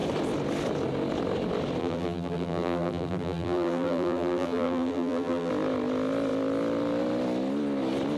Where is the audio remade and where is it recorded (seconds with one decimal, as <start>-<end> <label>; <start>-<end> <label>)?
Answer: 0.0-1.8 recorded; 1.8-5.5 remade; 5.5-8.2 recorded

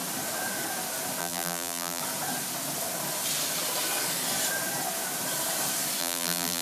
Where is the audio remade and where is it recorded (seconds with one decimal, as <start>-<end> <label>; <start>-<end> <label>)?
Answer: 0.0-1.2 recorded; 1.2-2.0 remade; 2.0-6.0 recorded; 6.0-6.6 remade

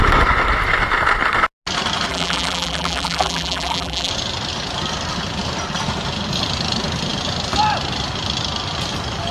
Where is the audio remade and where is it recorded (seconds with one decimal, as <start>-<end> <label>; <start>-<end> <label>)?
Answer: 0.0-2.1 recorded; 2.1-4.1 remade; 4.1-9.3 recorded

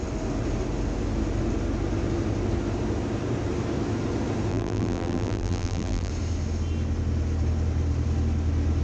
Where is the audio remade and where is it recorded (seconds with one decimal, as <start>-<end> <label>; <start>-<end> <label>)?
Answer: 0.0-4.5 recorded; 4.5-6.1 remade; 6.1-8.8 recorded

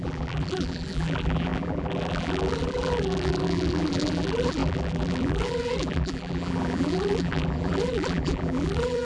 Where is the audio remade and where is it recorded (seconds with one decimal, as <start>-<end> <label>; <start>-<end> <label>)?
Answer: 0.0-9.0 remade

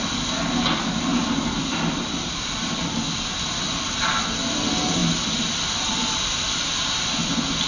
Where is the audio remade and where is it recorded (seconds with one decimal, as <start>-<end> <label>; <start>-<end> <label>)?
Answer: 0.0-1.1 recorded; 1.1-3.6 remade; 3.6-5.0 recorded; 5.0-6.4 remade; 6.4-7.7 recorded